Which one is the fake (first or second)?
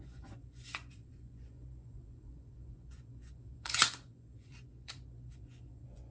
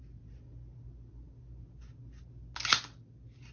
first